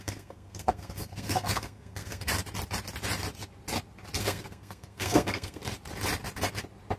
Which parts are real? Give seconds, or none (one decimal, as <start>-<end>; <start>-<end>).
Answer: 2.3-4.2; 5.6-7.0